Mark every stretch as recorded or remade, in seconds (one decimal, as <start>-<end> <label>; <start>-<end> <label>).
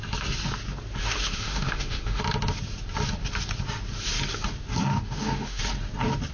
0.0-1.0 recorded; 1.0-2.2 remade; 2.2-4.9 recorded; 4.9-5.6 remade; 5.6-6.3 recorded